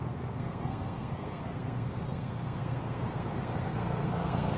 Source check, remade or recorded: remade